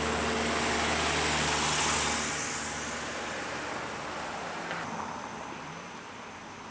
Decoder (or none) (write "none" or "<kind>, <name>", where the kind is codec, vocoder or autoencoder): none